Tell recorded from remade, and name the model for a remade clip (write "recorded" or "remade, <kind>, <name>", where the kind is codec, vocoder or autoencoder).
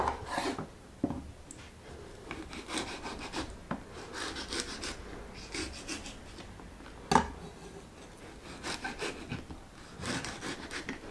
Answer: recorded